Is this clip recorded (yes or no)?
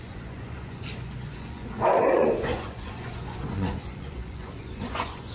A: no